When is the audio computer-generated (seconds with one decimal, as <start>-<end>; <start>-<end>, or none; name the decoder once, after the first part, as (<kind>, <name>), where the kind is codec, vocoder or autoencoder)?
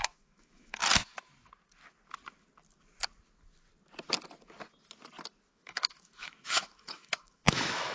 0.0-0.8 (autoencoder, DAC-VAE); 5.5-7.9